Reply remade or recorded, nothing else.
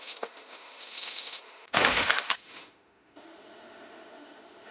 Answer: remade